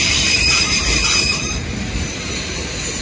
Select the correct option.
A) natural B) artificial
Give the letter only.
B